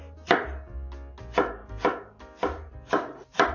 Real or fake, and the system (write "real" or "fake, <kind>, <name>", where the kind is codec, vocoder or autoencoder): real